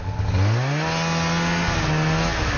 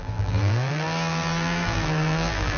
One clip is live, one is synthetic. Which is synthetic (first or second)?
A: second